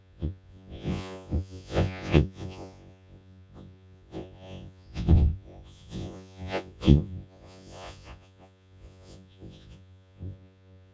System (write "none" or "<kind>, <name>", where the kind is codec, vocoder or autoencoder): vocoder, Vocos